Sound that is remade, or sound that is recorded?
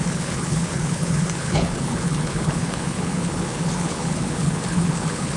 remade